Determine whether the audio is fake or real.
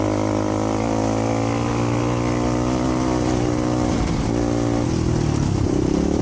real